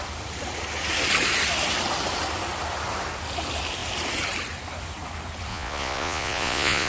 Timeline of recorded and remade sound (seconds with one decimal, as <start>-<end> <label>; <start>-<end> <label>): 0.0-5.5 recorded; 5.5-6.9 remade